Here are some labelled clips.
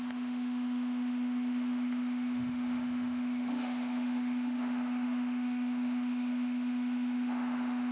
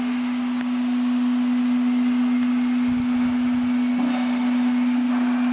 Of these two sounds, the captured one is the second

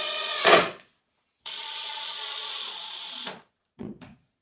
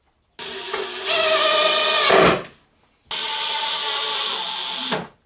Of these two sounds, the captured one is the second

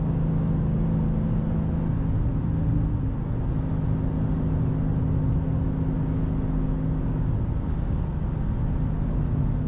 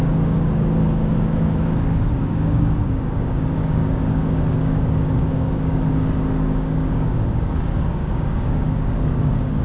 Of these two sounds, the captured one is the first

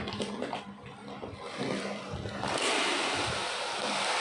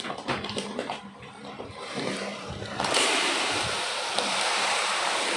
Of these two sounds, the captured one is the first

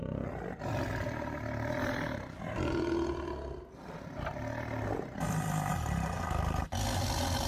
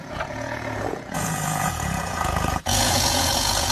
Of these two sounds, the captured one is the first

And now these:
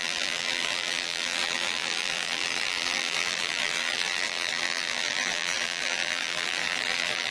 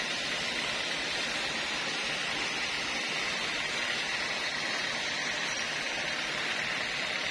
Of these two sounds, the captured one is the second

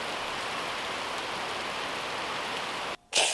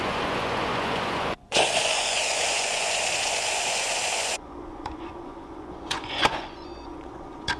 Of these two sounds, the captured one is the first